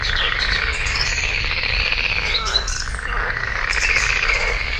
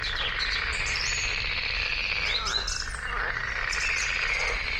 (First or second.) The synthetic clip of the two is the first